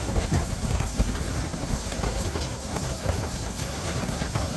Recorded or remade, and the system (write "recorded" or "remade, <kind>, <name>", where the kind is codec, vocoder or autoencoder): remade, codec, SNAC